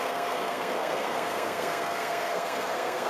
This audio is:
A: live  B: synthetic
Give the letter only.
B